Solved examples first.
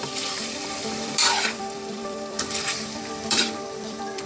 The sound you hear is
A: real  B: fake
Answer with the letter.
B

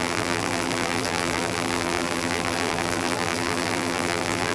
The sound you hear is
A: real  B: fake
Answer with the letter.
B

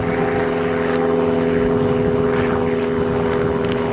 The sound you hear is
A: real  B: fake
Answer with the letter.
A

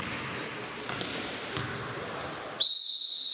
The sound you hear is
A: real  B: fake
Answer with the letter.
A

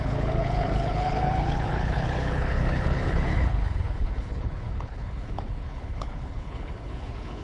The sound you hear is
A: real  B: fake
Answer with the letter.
B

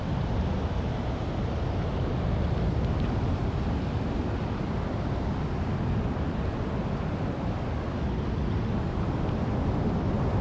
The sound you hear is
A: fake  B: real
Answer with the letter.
B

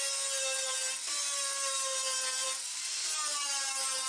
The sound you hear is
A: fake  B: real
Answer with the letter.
B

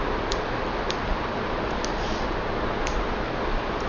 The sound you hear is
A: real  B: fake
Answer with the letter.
A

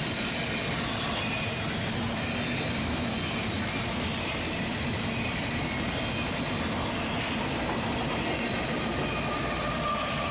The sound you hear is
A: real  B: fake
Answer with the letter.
A